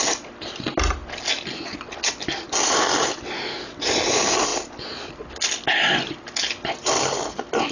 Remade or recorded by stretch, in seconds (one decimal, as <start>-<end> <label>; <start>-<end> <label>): 0.0-7.7 recorded